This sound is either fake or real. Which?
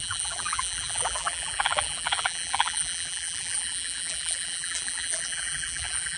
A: fake